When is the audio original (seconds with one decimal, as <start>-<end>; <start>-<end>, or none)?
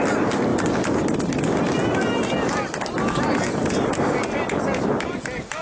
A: 0.0-5.6